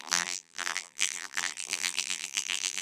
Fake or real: fake